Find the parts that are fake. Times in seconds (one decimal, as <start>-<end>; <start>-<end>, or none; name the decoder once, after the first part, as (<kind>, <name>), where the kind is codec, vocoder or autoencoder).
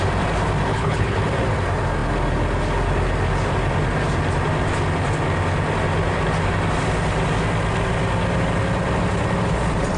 0.7-1.2 (codec, HILCodec)